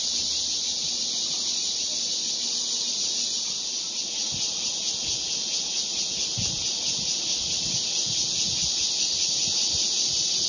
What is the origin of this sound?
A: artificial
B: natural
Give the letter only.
B